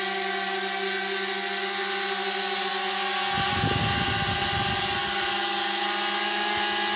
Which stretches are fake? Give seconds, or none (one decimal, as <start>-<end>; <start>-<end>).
none